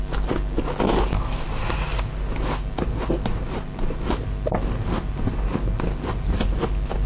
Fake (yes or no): no